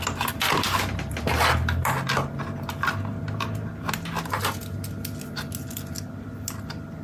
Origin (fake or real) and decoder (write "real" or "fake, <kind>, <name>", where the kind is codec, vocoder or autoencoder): real